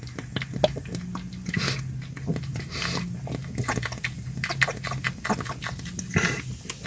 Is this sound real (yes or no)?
yes